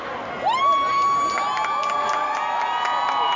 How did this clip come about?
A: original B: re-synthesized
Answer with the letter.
A